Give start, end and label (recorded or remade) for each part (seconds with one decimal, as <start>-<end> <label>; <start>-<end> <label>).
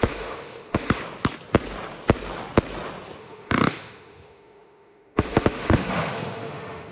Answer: 0.0-1.0 remade; 1.0-3.2 recorded; 3.2-6.9 remade